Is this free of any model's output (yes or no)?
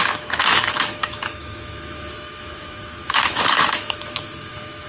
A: no